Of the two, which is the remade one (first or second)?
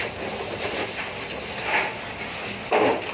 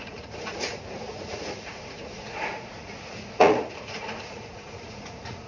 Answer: second